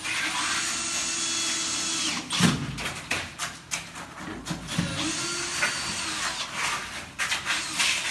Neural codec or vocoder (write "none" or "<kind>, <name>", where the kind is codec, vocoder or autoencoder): none